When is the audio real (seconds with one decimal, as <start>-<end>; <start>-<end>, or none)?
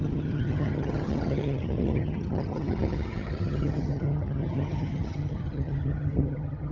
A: none